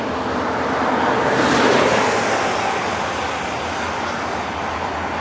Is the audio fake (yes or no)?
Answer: no